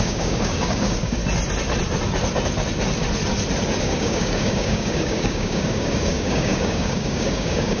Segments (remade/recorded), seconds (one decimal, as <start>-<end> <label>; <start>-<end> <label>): 0.0-1.2 remade; 1.2-3.8 recorded; 3.8-7.8 remade